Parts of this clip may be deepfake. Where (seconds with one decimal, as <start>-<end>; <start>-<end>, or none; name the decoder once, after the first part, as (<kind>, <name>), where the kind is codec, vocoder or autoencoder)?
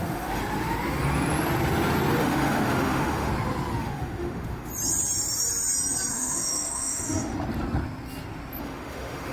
0.0-0.4 (autoencoder, DAC-VAE); 2.2-3.3; 3.8-4.7; 6.1-7.3; 8.6-9.3